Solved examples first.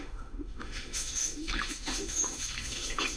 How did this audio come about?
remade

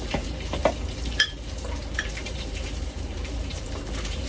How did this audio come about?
remade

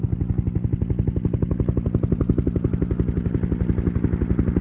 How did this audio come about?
recorded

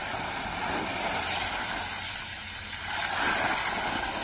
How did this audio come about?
recorded